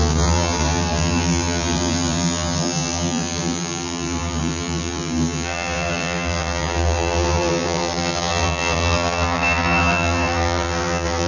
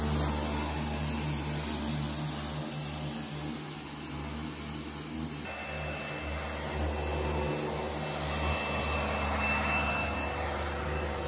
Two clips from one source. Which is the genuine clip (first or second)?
second